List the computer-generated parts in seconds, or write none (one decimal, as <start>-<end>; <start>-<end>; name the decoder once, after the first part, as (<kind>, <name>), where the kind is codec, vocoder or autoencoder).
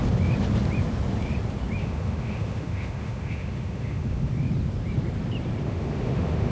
1.8-4.3 (autoencoder, DAC-VAE); 5.6-6.5